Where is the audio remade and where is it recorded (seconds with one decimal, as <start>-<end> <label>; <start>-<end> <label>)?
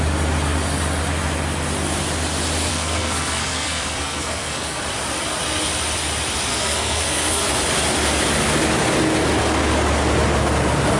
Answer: 0.0-2.7 recorded; 2.7-4.8 remade; 4.8-6.5 recorded; 6.5-7.5 remade; 7.5-11.0 recorded